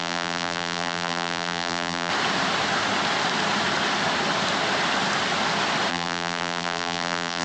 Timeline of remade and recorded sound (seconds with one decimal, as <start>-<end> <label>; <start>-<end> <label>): 0.0-2.1 remade; 2.1-5.9 recorded; 5.9-7.4 remade